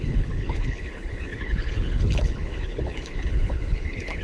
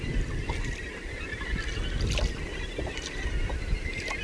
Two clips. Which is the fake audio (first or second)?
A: first